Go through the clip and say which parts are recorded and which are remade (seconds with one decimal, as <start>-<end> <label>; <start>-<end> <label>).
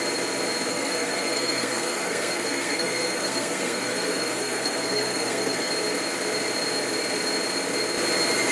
0.0-0.7 recorded; 0.7-5.7 remade; 5.7-8.5 recorded